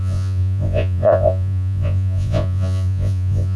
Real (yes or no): no